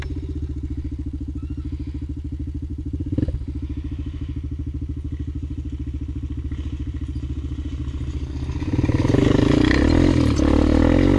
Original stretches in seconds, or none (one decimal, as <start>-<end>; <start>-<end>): 0.0-2.7; 3.2-11.2